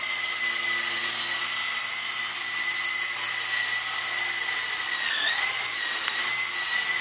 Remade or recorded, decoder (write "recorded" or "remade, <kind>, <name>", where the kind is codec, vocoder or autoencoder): recorded